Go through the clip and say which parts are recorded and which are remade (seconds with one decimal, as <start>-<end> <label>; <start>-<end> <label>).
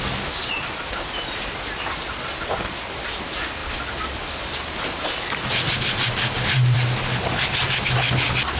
0.0-8.6 recorded